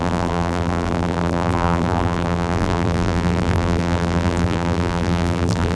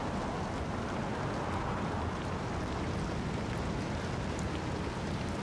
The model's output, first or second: first